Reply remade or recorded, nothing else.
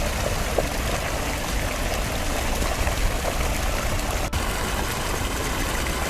recorded